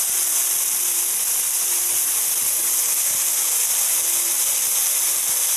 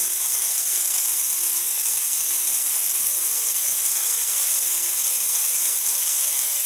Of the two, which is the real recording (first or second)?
first